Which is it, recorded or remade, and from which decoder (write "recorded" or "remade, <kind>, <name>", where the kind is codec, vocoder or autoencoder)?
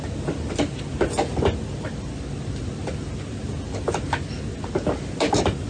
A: recorded